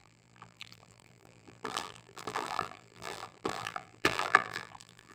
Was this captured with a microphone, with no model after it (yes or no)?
no